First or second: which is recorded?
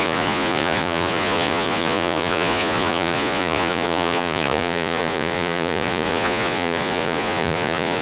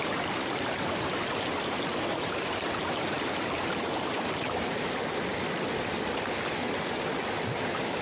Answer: second